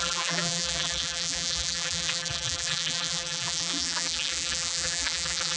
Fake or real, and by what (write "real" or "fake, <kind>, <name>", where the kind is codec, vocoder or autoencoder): fake, vocoder, BigVGAN v2